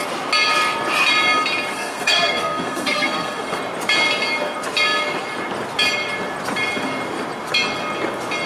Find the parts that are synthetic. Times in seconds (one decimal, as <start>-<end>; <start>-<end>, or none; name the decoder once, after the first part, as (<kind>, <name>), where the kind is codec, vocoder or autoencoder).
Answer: 1.7-3.6 (codec, SNAC)